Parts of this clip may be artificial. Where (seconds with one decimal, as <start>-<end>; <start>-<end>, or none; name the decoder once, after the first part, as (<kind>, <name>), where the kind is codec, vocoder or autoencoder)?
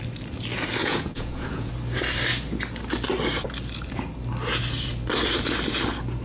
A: 0.8-1.7 (vocoder, Vocos)